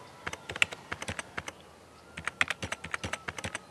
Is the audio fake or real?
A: real